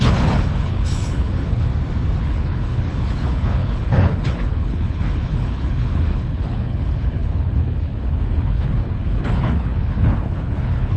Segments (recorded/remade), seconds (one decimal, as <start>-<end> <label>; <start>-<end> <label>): 0.0-1.7 remade; 1.7-2.2 recorded; 2.2-11.0 remade